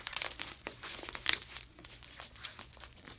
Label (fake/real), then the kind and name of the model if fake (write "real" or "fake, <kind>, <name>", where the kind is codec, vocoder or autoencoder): fake, vocoder, Vocos